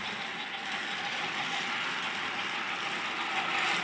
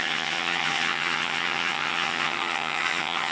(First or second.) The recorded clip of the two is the first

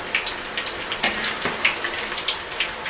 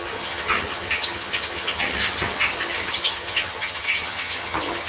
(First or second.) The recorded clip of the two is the first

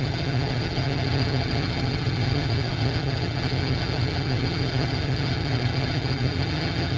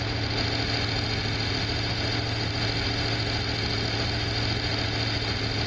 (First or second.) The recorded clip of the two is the second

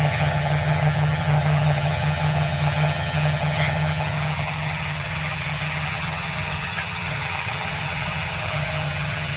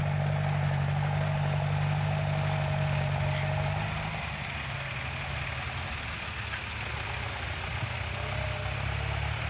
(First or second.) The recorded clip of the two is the second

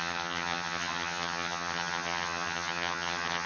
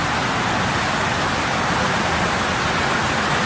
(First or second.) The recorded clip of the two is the second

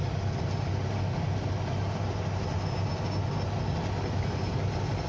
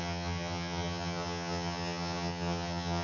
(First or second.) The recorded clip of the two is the first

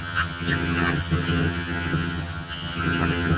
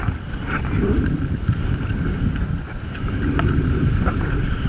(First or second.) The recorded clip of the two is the second